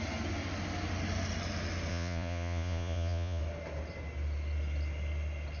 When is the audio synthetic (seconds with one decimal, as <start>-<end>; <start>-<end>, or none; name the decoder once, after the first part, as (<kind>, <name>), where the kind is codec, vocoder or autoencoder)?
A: 1.9-3.4 (vocoder, Vocos)